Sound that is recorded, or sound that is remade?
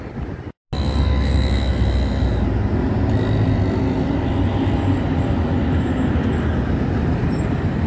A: recorded